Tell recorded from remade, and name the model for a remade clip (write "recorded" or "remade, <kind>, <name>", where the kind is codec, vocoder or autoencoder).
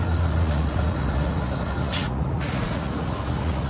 remade, vocoder, Vocos